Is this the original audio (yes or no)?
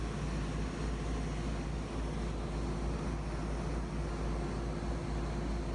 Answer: yes